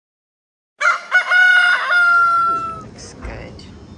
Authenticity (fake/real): real